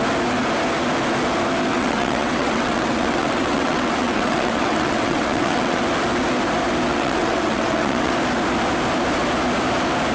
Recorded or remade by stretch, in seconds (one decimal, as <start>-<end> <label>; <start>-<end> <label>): 0.0-1.7 recorded; 1.7-5.8 remade; 5.8-6.9 recorded; 6.9-8.1 remade; 8.1-10.1 recorded

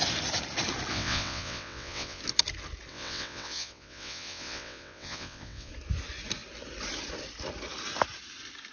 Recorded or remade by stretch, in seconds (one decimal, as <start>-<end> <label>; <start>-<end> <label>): 0.0-0.9 recorded; 0.9-2.2 remade; 2.2-2.9 recorded; 2.9-5.7 remade; 5.7-8.7 recorded

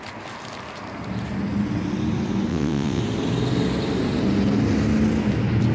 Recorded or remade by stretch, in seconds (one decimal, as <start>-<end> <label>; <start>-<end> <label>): 0.0-2.5 recorded; 2.5-3.0 remade; 3.0-5.7 recorded

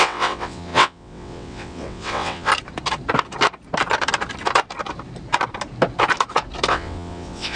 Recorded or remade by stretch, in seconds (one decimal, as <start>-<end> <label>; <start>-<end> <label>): 0.0-2.5 remade; 2.5-6.7 recorded; 6.7-7.6 remade

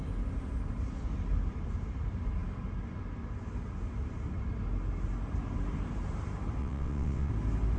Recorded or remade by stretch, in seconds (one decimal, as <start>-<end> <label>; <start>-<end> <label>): 0.0-6.6 recorded; 6.6-7.3 remade; 7.3-7.8 recorded